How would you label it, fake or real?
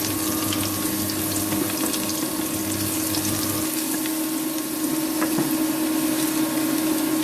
real